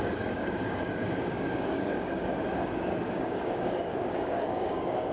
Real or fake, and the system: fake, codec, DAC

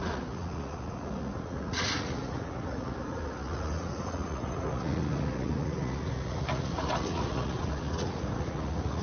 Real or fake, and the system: fake, vocoder, Vocos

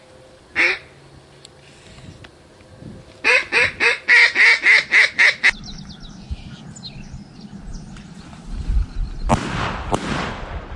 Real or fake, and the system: real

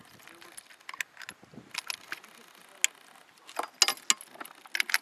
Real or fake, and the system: real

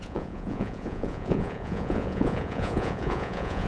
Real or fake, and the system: fake, vocoder, Vocos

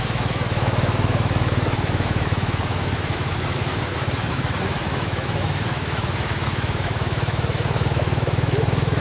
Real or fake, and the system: fake, autoencoder, DAC-VAE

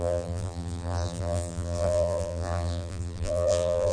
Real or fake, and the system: fake, vocoder, BigVGAN v2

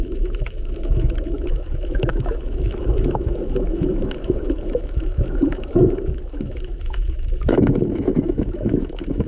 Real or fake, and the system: fake, autoencoder, DAC-VAE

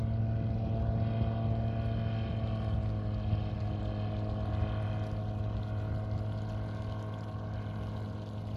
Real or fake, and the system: real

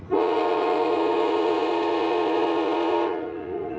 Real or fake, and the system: fake, vocoder, Vocos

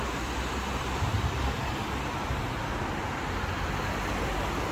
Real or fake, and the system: real